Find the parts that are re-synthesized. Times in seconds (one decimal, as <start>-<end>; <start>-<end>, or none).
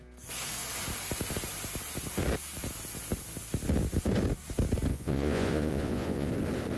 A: 4.9-6.3